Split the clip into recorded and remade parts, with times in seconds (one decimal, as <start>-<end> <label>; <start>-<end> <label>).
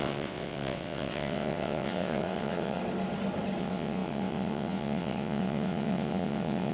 0.0-2.8 remade; 2.8-3.6 recorded; 3.6-6.7 remade